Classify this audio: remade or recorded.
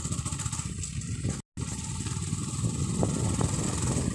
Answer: recorded